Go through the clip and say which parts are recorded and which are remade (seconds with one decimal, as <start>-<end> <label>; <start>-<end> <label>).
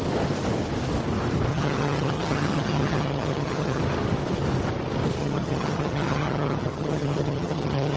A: 0.0-1.5 recorded; 1.5-3.8 remade; 3.8-5.2 recorded; 5.2-8.0 remade